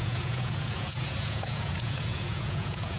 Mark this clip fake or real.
fake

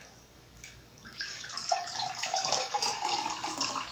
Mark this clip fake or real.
fake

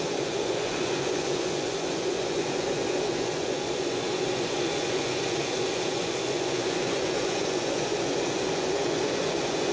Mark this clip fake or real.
fake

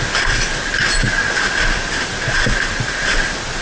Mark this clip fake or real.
fake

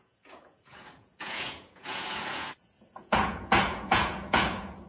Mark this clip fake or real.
fake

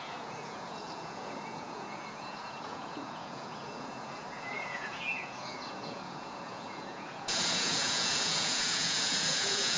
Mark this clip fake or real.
fake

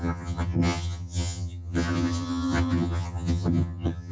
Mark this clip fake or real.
fake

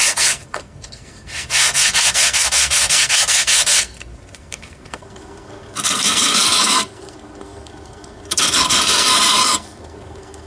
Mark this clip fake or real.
fake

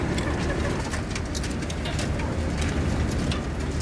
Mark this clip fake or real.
real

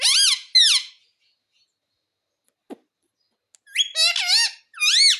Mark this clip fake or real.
real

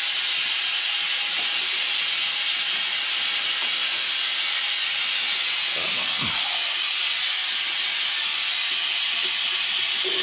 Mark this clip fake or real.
real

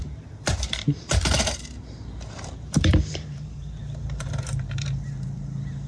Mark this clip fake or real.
fake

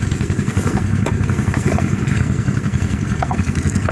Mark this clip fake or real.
fake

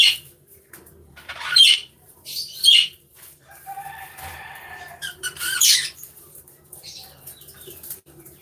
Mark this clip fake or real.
fake